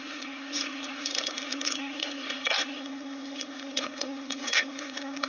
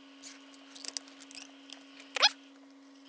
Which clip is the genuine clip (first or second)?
second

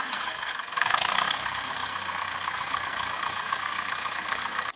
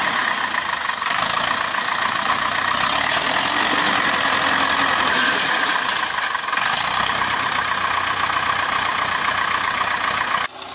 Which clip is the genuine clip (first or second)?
second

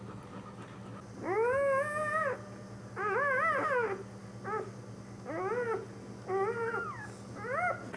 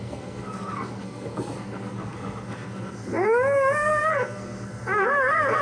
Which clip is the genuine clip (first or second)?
first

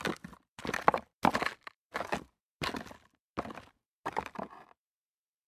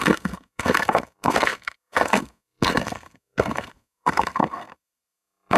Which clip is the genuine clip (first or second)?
first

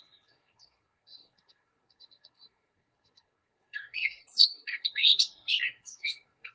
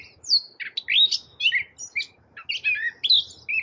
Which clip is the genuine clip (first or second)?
second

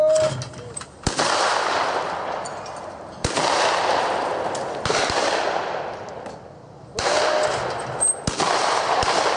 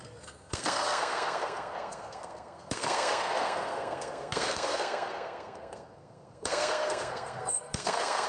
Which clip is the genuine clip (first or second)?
first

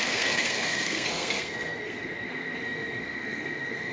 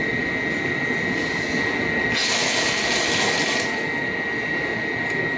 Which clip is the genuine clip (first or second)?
second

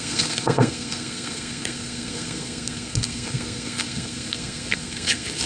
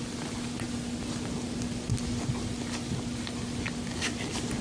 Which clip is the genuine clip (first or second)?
second